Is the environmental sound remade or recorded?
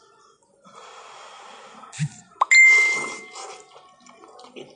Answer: recorded